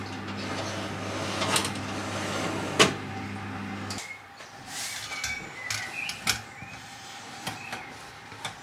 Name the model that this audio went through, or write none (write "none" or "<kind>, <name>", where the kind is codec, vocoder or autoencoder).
none